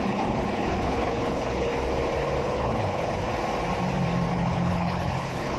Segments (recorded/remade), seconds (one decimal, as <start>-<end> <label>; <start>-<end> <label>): 0.0-1.7 remade; 1.7-2.4 recorded; 2.4-3.3 remade; 3.3-4.3 recorded; 4.3-5.6 remade